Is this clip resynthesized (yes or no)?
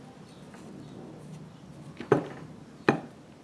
no